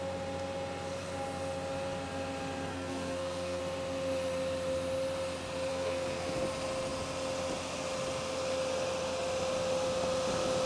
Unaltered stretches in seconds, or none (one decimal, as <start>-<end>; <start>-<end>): 0.0-2.7; 3.6-5.7; 6.4-10.7

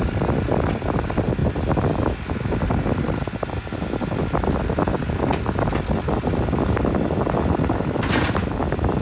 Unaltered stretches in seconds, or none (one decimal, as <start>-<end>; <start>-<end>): 0.0-9.0